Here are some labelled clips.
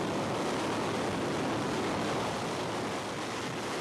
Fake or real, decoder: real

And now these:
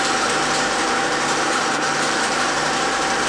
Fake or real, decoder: fake, vocoder, BigVGAN v2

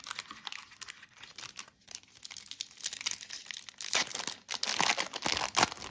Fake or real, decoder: real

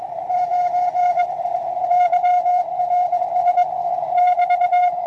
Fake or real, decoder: fake, vocoder, BigVGAN v2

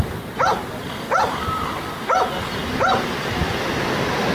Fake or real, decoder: real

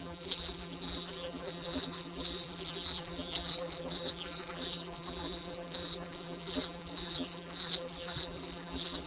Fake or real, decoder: fake, vocoder, BigVGAN v2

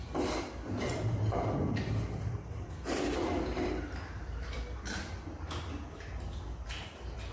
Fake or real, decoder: fake, vocoder, BigVGAN v2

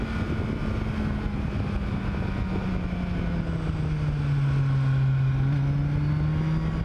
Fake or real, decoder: real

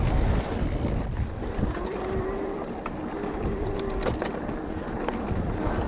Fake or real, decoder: real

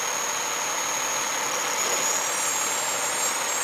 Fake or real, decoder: real